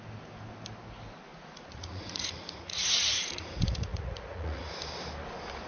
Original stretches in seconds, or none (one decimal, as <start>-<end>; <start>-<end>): 0.0-1.3; 4.7-5.7